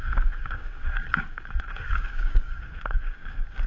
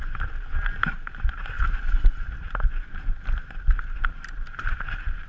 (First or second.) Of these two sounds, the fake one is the first